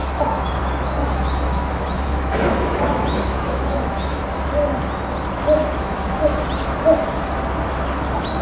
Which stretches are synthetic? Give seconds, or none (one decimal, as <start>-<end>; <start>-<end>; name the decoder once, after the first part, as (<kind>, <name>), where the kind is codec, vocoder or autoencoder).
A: 0.0-0.6 (autoencoder, DAC-VAE); 1.0-4.2; 5.6-6.5